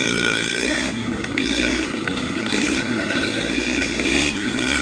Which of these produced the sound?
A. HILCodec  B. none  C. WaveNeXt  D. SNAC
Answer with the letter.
D